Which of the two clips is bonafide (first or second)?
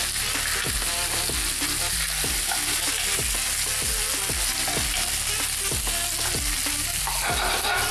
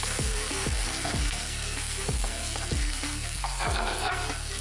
first